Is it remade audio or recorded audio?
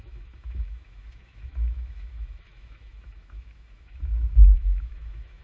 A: remade